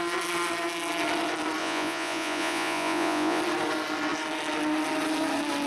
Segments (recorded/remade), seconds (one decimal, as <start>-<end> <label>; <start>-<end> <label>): 0.0-1.6 recorded; 1.6-3.4 remade; 3.4-5.7 recorded